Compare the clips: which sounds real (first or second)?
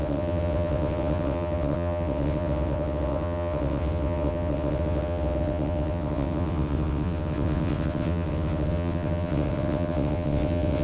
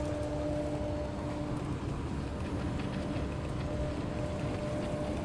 second